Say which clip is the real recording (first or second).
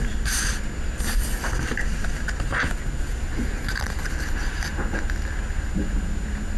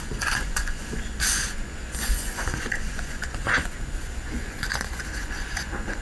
first